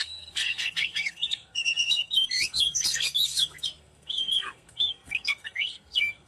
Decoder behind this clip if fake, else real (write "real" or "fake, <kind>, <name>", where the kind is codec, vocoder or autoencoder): fake, codec, SNAC